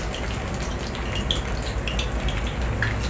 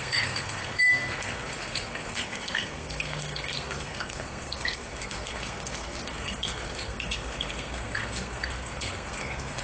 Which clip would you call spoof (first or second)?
second